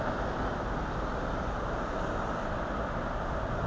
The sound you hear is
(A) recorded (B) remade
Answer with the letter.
A